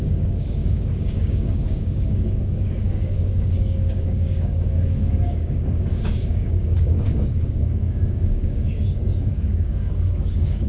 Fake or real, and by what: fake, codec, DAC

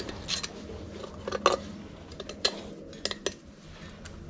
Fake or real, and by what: real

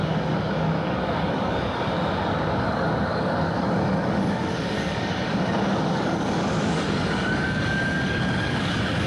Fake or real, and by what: fake, codec, DAC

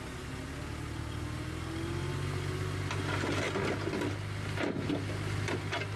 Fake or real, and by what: real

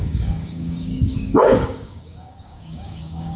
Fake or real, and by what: fake, codec, DAC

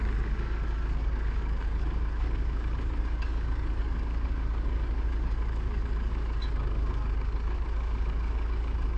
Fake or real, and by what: fake, codec, DAC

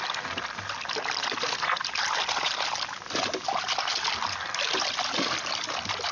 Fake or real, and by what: real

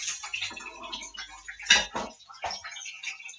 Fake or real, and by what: real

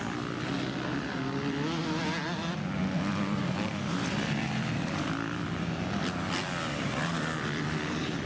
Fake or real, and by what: real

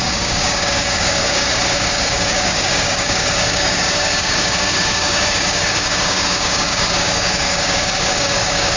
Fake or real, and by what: fake, codec, DAC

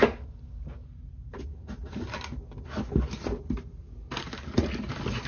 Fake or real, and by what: real